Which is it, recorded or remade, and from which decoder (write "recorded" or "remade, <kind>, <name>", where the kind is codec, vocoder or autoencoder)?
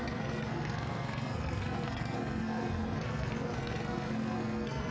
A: remade, codec, SNAC